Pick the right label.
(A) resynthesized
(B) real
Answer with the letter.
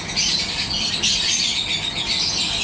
B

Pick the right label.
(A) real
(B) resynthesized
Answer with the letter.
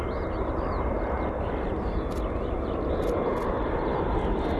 A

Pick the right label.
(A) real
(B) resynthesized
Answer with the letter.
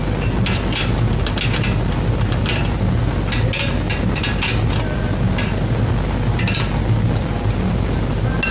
A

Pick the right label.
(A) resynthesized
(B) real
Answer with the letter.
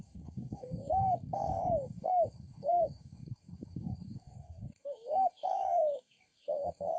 A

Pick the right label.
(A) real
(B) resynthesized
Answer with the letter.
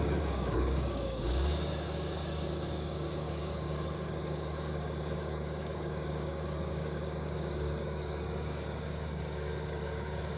B